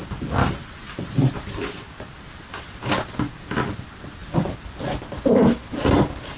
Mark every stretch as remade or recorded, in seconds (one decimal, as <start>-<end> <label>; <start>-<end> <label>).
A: 0.0-6.4 recorded